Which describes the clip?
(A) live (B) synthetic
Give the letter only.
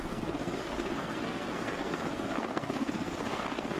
B